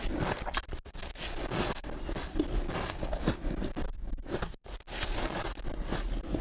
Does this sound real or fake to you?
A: real